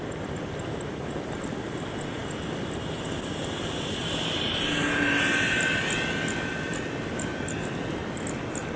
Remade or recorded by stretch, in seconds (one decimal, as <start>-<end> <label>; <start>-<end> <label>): 0.0-8.8 recorded